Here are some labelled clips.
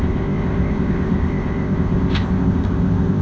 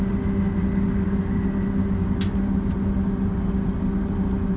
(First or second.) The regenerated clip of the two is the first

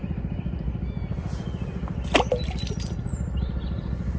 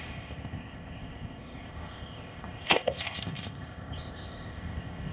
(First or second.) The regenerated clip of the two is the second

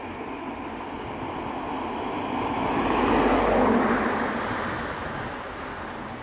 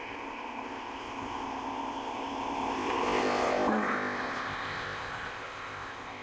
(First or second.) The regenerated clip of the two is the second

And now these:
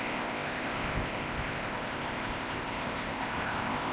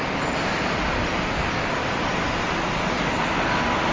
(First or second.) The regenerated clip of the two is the first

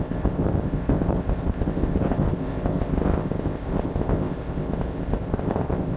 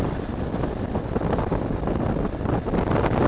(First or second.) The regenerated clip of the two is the first